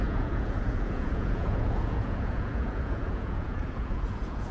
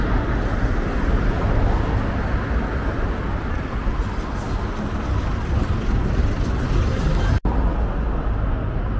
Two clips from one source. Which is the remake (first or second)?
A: first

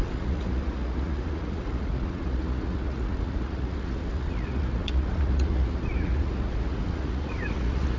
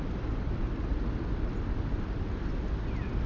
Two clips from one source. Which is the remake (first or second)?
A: first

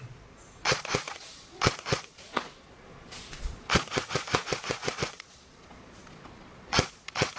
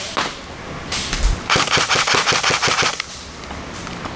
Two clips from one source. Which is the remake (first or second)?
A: first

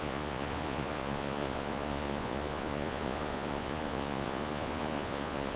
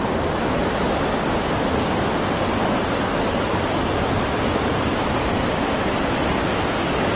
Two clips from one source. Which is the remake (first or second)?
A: first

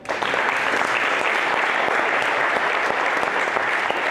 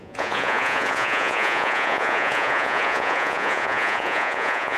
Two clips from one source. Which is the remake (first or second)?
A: second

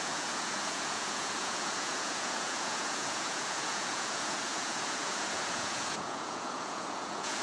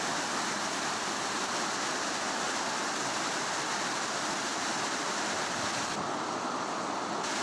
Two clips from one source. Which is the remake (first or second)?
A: first